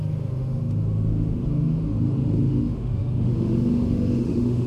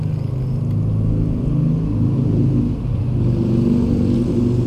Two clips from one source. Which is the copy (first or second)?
first